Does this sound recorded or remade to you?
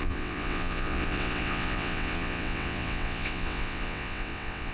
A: remade